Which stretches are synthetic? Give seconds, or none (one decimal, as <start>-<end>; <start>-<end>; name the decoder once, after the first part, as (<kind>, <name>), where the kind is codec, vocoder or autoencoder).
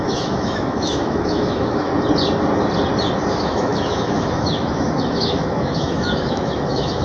0.0-1.9 (autoencoder, DAC-VAE); 3.3-7.0